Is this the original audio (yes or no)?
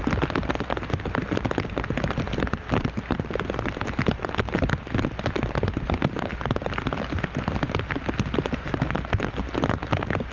yes